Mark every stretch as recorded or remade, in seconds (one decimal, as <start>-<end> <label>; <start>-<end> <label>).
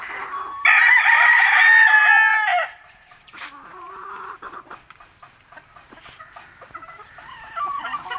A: 0.0-2.3 recorded; 2.3-4.5 remade; 4.5-8.2 recorded